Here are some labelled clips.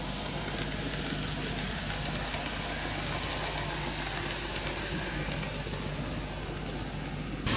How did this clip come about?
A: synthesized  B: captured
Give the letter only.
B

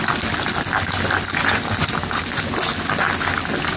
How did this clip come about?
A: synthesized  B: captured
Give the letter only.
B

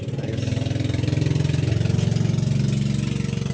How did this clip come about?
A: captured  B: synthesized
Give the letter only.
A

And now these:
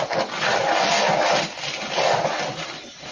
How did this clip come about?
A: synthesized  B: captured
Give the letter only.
B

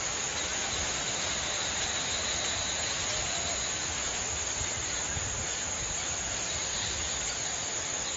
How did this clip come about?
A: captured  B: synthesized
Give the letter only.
A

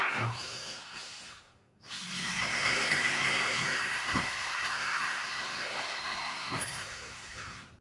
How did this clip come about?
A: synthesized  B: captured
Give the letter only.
A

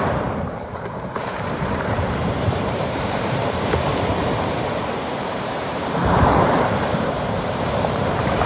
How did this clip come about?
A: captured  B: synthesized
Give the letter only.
B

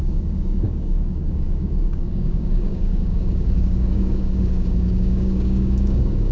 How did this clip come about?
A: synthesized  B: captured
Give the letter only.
A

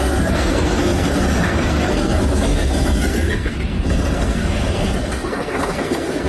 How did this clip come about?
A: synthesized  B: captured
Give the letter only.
A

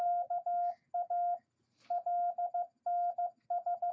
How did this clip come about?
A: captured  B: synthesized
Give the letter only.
A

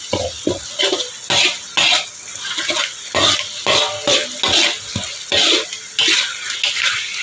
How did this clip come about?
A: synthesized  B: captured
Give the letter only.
B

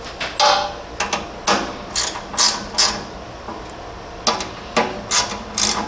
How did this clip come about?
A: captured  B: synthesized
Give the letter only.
A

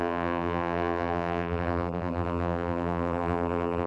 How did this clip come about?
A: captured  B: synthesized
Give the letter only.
B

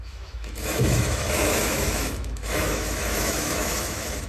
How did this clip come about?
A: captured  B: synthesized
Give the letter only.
B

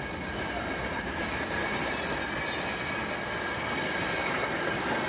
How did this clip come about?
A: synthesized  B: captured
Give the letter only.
B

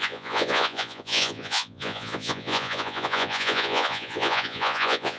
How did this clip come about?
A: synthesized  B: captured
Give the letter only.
A